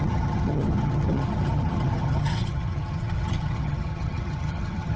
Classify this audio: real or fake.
fake